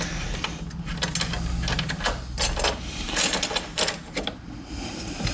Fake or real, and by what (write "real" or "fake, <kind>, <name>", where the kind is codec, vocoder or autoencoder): real